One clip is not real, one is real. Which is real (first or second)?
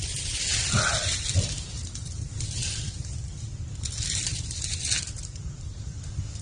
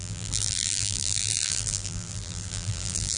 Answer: first